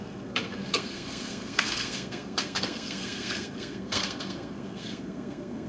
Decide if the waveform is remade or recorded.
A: remade